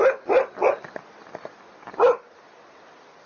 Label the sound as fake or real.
real